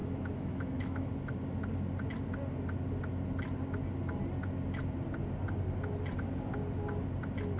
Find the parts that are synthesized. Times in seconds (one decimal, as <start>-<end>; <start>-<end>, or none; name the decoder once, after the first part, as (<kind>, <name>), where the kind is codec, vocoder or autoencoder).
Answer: 0.0-1.1 (autoencoder, DAC-VAE)